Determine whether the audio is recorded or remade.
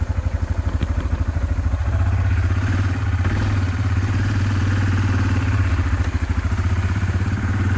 remade